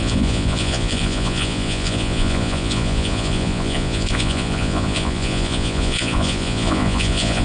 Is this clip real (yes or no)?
no